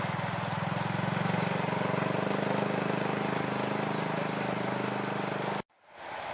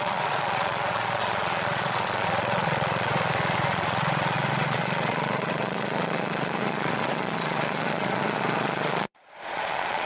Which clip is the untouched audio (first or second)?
first